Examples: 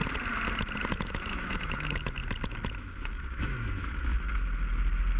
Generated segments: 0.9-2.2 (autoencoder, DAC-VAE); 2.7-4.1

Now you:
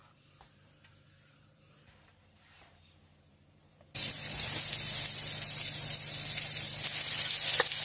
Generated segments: 0.0-4.7 (vocoder, BigVGAN v2)

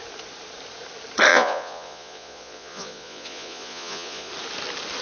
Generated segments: 1.3-4.3 (vocoder, Vocos)